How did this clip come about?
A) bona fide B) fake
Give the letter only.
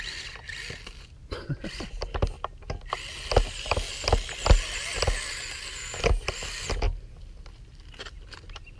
A